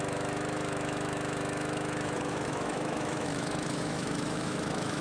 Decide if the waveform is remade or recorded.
remade